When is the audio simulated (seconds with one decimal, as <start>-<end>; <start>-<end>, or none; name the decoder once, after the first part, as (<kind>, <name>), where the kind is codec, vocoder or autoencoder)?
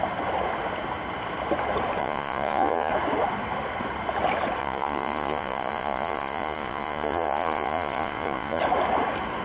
2.0-2.9 (vocoder, Vocos); 4.6-8.6